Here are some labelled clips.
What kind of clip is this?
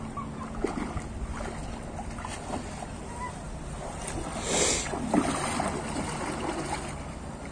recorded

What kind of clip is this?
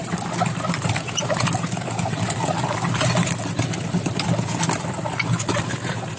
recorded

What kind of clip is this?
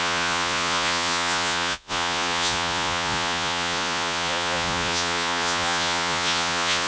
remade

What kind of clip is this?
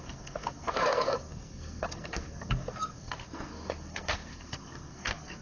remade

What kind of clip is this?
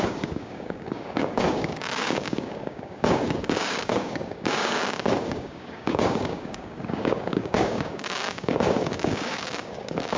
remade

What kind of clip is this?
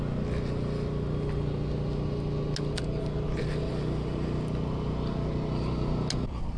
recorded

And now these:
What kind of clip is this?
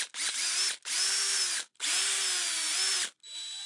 recorded